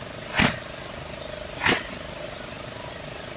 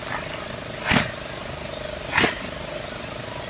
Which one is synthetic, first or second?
first